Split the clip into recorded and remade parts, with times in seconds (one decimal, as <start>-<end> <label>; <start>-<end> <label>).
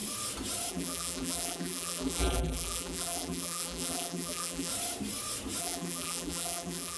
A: 0.0-0.7 recorded; 0.7-4.7 remade; 4.7-5.6 recorded; 5.6-7.0 remade